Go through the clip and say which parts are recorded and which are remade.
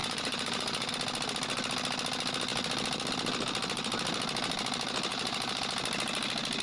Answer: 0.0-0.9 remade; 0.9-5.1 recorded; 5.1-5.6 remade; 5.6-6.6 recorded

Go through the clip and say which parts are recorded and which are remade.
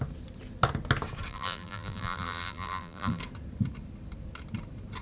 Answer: 0.0-1.3 recorded; 1.3-3.2 remade; 3.2-5.0 recorded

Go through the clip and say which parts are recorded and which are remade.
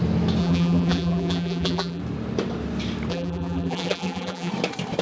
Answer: 0.0-0.4 recorded; 0.4-2.0 remade; 2.0-3.1 recorded; 3.1-4.5 remade; 4.5-5.0 recorded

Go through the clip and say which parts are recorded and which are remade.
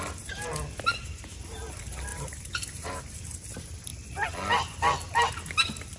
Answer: 0.0-2.1 recorded; 2.1-3.0 remade; 3.0-6.0 recorded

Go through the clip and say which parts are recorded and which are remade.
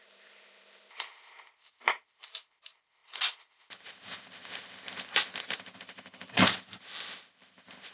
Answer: 0.0-7.9 recorded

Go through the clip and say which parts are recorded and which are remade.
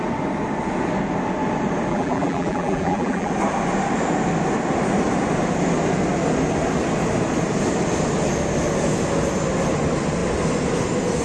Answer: 0.0-1.9 recorded; 1.9-3.3 remade; 3.3-11.2 recorded